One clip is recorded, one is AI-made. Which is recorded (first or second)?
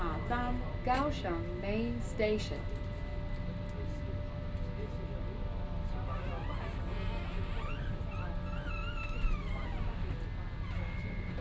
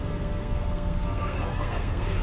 first